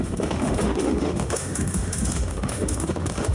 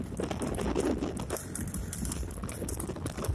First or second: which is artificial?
first